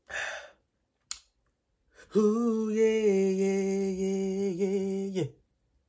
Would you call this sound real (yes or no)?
yes